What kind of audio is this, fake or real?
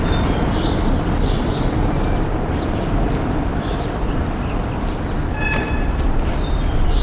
real